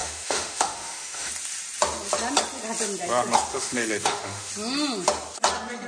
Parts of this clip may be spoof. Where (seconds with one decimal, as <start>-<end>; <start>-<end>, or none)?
0.0-1.3; 3.5-4.5